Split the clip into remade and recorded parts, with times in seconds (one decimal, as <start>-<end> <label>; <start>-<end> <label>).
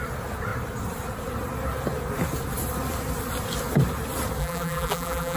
0.0-4.4 recorded; 4.4-5.4 remade